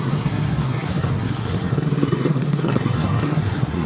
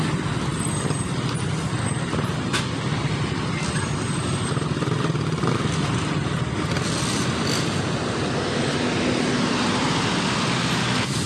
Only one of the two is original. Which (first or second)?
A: second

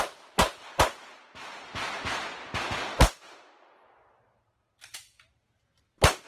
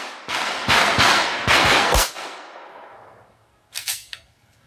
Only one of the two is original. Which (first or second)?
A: first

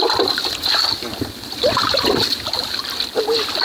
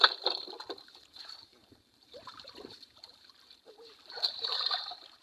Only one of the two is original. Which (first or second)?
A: first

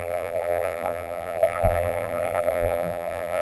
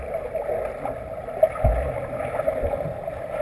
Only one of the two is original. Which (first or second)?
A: second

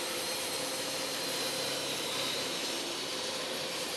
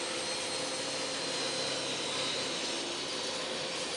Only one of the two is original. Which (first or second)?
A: second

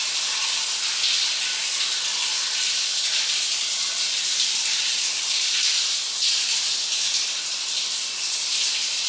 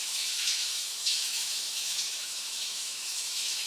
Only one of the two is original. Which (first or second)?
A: first